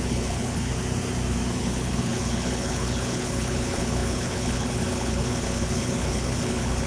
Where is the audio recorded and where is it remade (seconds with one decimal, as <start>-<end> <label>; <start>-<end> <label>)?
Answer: 0.0-0.7 remade; 0.7-1.5 recorded; 1.5-6.9 remade